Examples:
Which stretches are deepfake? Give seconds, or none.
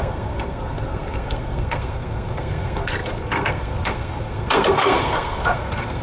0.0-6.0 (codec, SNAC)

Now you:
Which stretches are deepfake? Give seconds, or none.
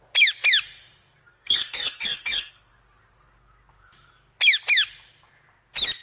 1.3-2.7 (codec, SNAC)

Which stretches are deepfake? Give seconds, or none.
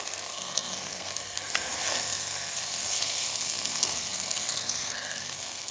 0.0-5.7 (codec, SNAC)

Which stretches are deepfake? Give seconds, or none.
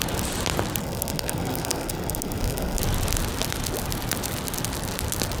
0.8-2.8 (codec, SNAC)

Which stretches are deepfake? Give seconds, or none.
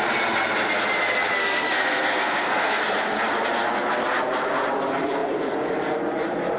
1.4-2.8 (codec, SNAC)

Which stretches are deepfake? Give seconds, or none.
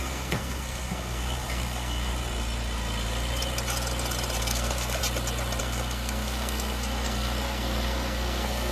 0.0-2.1 (codec, SNAC); 4.4-5.0; 5.6-8.7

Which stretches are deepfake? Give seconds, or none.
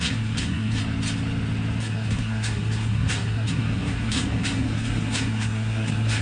0.0-0.8 (codec, SNAC); 1.8-6.2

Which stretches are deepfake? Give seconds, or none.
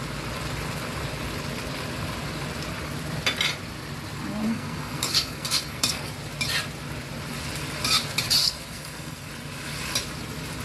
4.4-6.1 (codec, SNAC); 8.4-9.3